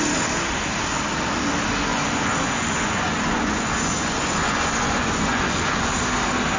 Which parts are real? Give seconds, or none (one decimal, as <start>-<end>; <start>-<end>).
0.0-1.9; 5.9-6.6